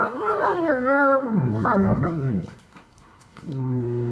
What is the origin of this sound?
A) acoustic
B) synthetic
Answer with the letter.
B